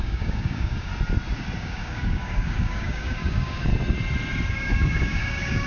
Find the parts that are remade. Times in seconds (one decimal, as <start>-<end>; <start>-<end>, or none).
0.0-0.9; 1.6-3.7; 4.5-5.7